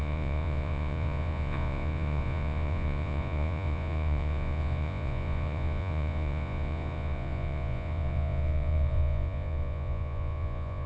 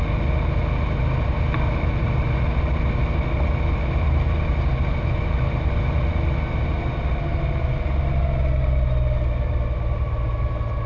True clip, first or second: second